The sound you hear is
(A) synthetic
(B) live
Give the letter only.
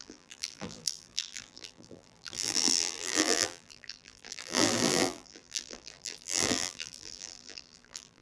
A